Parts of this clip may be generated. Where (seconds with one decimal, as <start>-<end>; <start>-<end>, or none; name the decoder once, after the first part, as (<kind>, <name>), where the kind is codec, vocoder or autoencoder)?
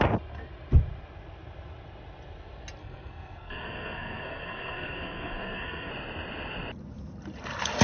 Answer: 2.8-5.9 (codec, SNAC)